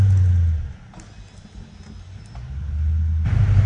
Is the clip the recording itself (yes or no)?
yes